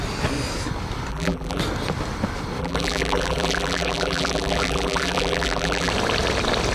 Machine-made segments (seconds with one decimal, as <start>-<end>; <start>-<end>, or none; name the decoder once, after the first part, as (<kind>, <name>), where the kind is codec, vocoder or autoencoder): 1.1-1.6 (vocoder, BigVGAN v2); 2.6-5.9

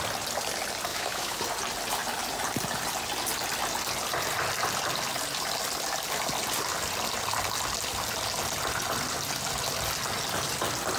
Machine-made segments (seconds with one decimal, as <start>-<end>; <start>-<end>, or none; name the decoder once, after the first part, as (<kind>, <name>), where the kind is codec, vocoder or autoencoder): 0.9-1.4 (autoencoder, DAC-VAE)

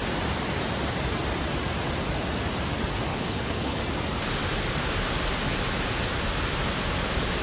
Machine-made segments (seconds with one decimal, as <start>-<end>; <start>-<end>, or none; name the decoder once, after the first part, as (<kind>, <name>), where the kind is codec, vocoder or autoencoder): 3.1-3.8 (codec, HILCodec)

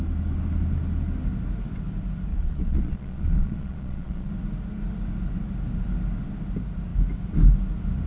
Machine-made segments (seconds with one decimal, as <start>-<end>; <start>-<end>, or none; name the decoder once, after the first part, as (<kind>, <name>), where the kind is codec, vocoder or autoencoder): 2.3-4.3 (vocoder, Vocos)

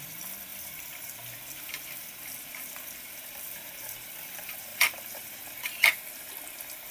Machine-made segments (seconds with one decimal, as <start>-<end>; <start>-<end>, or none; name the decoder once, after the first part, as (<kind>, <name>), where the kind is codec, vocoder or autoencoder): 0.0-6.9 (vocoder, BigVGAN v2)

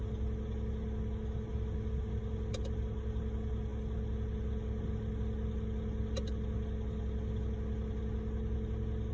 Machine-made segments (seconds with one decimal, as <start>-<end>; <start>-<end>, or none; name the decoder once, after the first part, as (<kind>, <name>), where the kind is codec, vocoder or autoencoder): none